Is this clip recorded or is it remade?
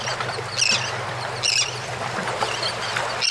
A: recorded